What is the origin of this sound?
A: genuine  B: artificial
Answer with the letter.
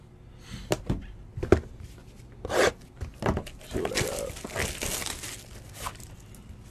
A